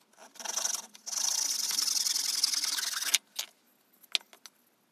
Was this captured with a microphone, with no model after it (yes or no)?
yes